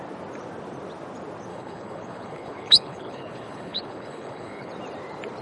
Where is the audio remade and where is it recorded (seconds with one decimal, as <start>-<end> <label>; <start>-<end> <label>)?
0.0-1.5 recorded; 1.5-4.7 remade; 4.7-5.4 recorded